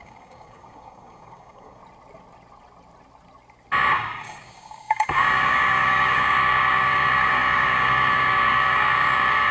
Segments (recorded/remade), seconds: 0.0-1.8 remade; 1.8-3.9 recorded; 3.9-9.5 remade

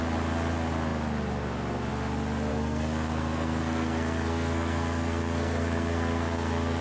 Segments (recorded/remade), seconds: 0.0-2.5 recorded; 2.5-6.8 remade

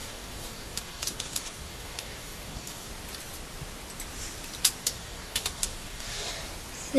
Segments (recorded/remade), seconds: 0.0-2.9 remade; 2.9-4.8 recorded; 4.8-6.3 remade; 6.3-7.0 recorded

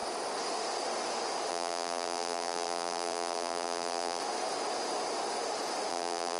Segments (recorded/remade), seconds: 0.0-1.5 recorded; 1.5-4.2 remade; 4.2-5.9 recorded; 5.9-6.4 remade

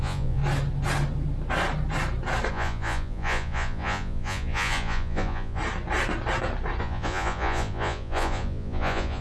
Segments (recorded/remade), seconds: 0.0-0.4 remade; 0.4-2.5 recorded; 2.5-5.6 remade; 5.6-6.8 recorded; 6.8-9.2 remade